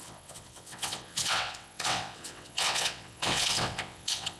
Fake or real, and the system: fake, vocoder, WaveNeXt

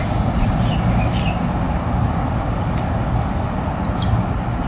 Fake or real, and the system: real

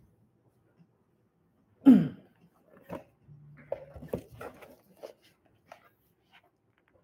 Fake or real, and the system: real